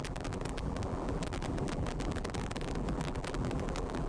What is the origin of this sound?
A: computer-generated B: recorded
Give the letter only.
A